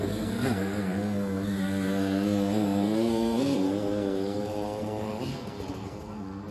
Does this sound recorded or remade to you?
remade